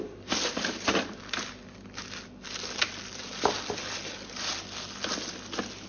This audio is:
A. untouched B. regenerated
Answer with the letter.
A